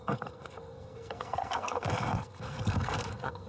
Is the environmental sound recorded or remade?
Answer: remade